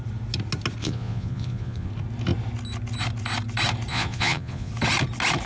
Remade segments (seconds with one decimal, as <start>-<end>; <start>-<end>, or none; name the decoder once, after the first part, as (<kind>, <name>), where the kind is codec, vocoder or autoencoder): 0.8-1.9 (vocoder, Vocos); 3.9-4.7

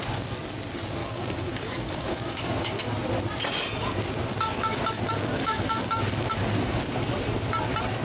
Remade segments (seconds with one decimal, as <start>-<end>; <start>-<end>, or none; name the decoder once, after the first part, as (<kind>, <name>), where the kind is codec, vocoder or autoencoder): 1.0-2.9 (codec, DAC); 4.3-6.9

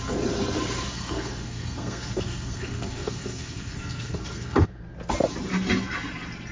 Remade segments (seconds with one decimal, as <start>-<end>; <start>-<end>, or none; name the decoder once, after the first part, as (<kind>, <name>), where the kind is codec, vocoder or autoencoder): 0.9-4.8 (codec, SNAC)

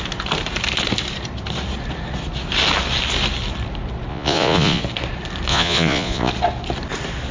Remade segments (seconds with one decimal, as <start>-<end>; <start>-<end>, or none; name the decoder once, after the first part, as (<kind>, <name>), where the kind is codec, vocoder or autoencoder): 4.1-4.8 (vocoder, Vocos); 5.5-6.3

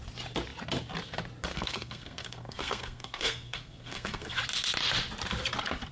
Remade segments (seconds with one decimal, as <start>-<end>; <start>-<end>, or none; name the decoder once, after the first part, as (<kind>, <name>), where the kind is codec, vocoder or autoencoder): 1.5-4.4 (codec, SNAC)

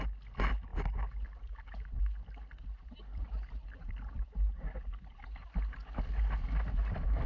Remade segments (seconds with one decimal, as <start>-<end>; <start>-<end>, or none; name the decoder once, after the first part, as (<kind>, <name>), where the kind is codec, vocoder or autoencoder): none